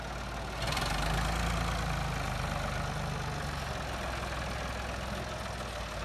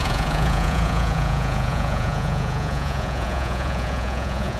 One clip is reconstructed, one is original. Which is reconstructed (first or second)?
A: second